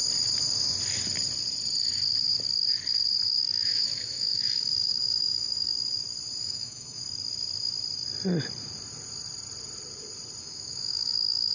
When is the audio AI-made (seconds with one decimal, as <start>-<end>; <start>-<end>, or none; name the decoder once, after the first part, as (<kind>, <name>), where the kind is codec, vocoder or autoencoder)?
3.4-5.7 (autoencoder, DAC-VAE); 6.4-7.0; 10.4-11.5